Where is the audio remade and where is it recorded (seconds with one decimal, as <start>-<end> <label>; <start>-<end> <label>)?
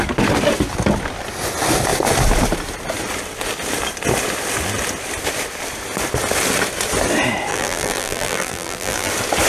0.0-7.5 recorded; 7.5-9.1 remade; 9.1-9.5 recorded